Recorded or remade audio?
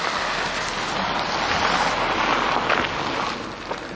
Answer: recorded